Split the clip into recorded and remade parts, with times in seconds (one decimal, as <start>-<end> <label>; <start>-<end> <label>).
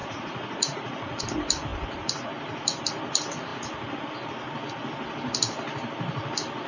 0.0-1.2 remade; 1.2-6.7 recorded